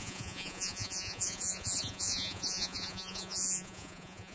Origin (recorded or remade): remade